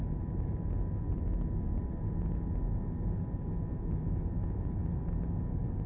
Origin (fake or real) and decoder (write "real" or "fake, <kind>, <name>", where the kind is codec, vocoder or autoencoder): real